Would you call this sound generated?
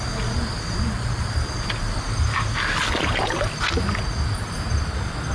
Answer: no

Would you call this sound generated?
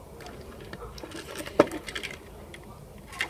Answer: no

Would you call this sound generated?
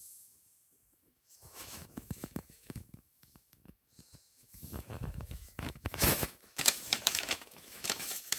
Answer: yes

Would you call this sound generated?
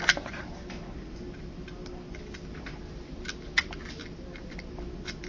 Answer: no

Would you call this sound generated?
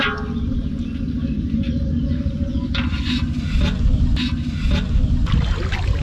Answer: no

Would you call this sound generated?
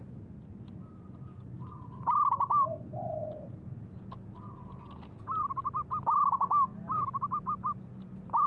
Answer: no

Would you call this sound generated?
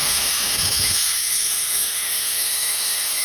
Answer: yes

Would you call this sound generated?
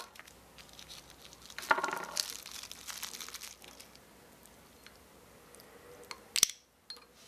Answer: no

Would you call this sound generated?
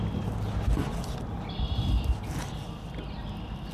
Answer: no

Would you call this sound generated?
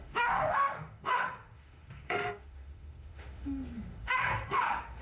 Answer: yes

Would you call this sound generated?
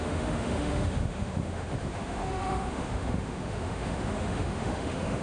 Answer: yes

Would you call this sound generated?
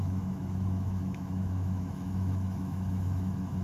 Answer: yes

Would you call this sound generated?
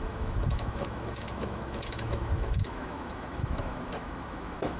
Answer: yes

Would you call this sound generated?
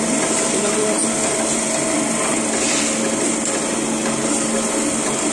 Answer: no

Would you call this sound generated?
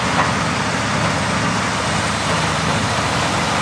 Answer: no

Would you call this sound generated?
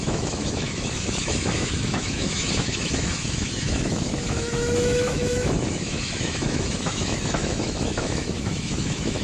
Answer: yes